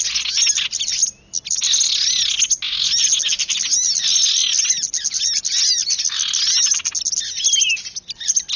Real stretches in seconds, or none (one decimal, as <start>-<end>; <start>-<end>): 0.0-8.6